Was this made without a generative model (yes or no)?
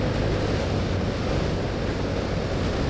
yes